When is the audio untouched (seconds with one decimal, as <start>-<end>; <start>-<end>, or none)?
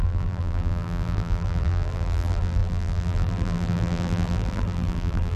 none